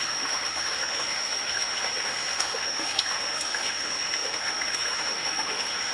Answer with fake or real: fake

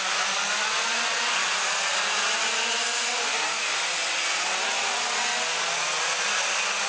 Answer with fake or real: real